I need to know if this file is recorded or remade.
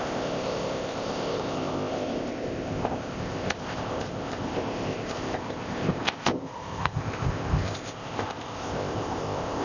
remade